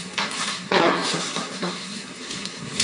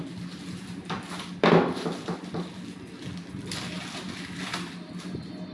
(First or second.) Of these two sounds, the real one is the second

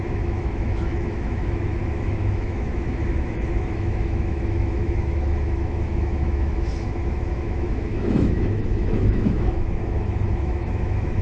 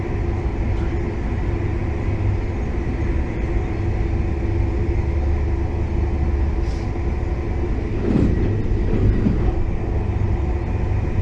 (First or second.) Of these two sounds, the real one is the second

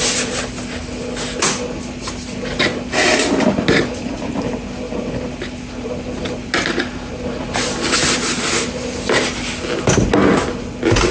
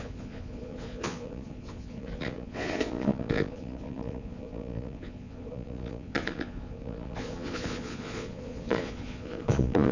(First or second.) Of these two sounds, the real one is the first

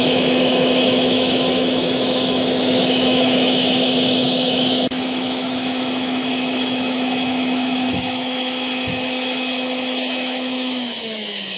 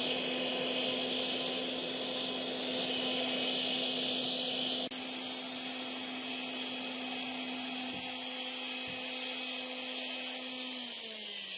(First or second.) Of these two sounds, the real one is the second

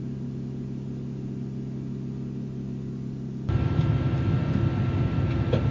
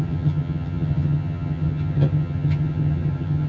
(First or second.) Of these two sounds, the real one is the first